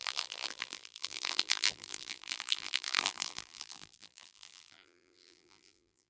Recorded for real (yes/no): no